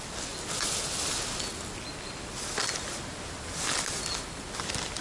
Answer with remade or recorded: recorded